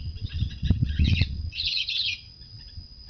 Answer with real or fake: fake